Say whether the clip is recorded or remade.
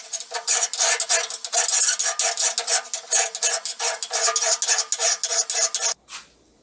recorded